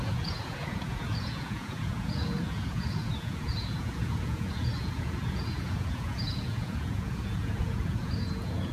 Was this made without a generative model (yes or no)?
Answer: no